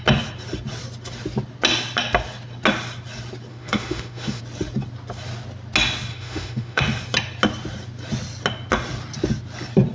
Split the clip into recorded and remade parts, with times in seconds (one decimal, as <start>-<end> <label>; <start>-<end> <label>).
0.0-3.5 recorded; 3.5-4.4 remade; 4.4-6.1 recorded; 6.1-6.8 remade; 6.8-9.9 recorded